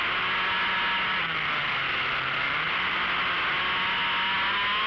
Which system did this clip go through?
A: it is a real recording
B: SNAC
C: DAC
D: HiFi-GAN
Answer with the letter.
A